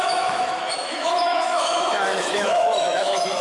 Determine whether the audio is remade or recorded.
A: remade